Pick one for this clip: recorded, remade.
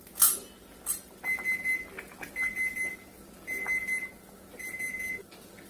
recorded